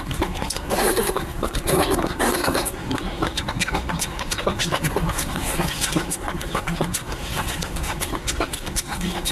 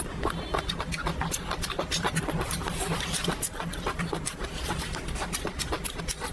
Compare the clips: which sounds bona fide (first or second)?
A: second